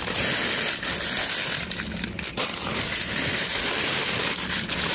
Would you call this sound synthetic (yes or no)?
no